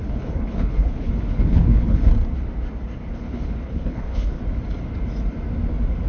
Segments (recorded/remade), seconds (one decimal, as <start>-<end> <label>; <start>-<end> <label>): 0.0-2.1 remade; 2.1-3.1 recorded; 3.1-4.4 remade; 4.4-6.1 recorded